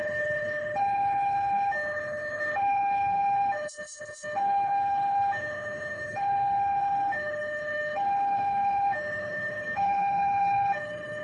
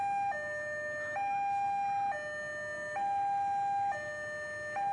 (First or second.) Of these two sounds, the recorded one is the second